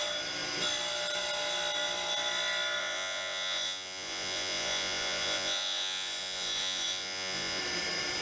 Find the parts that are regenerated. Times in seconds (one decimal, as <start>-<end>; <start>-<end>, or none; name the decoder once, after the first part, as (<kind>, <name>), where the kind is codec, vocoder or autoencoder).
2.8-7.6 (vocoder, Vocos)